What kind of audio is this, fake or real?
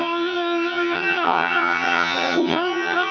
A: fake